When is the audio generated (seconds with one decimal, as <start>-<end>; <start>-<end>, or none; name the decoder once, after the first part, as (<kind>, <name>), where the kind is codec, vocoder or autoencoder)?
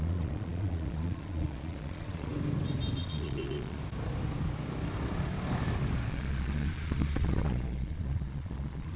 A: 0.0-2.3 (vocoder, Vocos); 3.0-3.8; 6.1-9.0